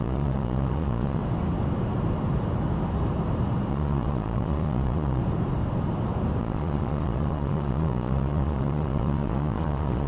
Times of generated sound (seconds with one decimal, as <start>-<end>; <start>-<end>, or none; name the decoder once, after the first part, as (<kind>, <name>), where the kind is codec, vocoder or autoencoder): 0.0-1.2 (vocoder, Vocos); 3.7-5.2; 6.4-10.1